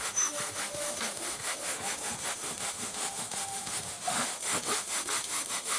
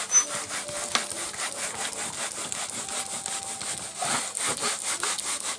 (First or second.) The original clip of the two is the second